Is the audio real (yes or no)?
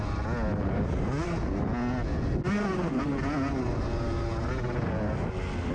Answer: yes